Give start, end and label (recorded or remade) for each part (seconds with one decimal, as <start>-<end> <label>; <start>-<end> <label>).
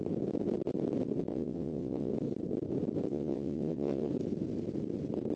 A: 0.0-1.3 recorded; 1.3-2.1 remade; 2.1-3.1 recorded; 3.1-4.1 remade; 4.1-5.4 recorded